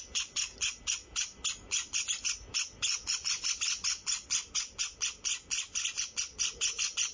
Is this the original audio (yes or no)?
yes